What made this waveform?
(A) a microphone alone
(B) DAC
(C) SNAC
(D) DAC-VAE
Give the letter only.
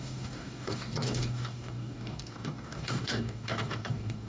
B